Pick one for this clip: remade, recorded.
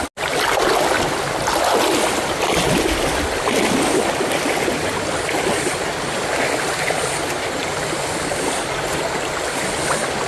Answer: recorded